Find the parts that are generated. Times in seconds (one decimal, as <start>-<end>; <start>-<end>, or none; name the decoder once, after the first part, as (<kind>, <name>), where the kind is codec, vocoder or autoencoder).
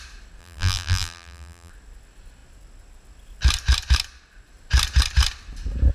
0.4-1.7 (vocoder, BigVGAN v2)